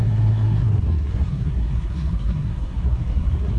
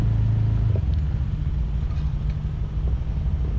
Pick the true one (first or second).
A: second